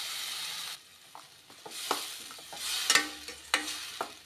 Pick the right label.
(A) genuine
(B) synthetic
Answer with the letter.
A